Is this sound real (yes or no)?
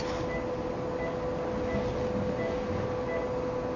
yes